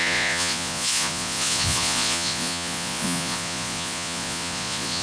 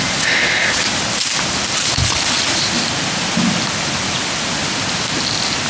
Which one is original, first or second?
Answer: second